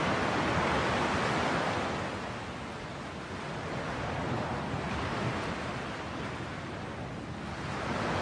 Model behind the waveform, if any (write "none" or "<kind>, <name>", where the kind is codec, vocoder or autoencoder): none